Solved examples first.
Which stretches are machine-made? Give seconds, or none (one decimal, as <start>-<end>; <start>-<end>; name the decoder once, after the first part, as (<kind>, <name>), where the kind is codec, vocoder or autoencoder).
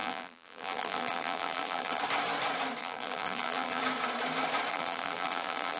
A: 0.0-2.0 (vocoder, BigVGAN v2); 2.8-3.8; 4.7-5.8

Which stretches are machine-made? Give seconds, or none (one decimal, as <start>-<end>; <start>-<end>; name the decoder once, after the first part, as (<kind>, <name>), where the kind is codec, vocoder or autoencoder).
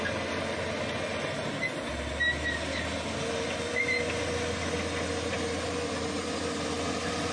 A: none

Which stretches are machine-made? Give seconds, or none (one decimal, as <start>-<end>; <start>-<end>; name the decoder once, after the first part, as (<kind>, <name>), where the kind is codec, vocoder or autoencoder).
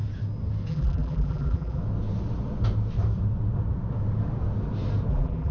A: 0.7-1.8 (vocoder, BigVGAN v2); 5.1-5.5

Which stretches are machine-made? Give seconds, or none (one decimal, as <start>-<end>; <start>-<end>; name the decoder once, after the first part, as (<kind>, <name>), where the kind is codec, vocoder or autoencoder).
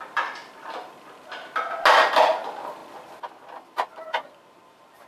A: 0.0-0.4 (vocoder, BigVGAN v2); 2.1-2.8; 4.5-5.1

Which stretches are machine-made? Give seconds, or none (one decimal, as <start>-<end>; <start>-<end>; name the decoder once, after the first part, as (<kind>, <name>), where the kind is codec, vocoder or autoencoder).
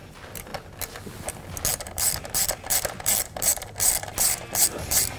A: 0.0-0.5 (vocoder, BigVGAN v2); 1.7-5.2